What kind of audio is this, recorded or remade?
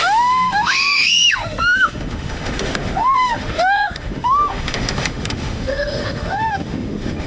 remade